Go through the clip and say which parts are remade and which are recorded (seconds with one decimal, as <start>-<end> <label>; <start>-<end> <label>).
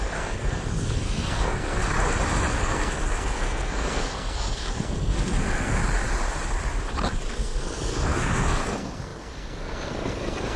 0.0-1.8 remade; 1.8-2.5 recorded; 2.5-5.8 remade; 5.8-7.3 recorded; 7.3-10.6 remade